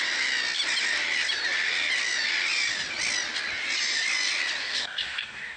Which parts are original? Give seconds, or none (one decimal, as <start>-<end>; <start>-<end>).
0.0-4.6